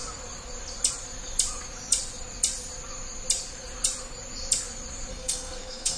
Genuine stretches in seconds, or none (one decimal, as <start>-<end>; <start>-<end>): 0.0-5.1